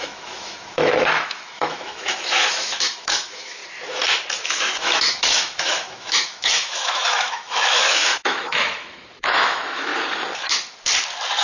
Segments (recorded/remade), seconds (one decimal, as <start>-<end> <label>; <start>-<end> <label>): 0.0-3.6 remade; 3.6-4.4 recorded; 4.4-9.9 remade; 9.9-11.4 recorded